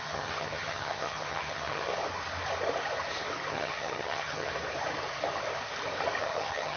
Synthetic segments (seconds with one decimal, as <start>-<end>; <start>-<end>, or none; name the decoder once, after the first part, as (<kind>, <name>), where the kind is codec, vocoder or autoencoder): 0.0-1.9 (vocoder, HiFi-GAN); 3.5-4.5; 6.2-6.8